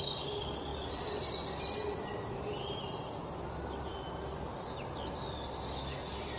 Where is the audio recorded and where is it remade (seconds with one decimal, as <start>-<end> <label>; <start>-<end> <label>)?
0.0-0.7 recorded; 0.7-1.3 remade; 1.3-5.9 recorded; 5.9-6.4 remade